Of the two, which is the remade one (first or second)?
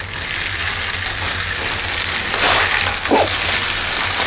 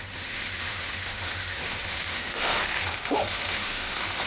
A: second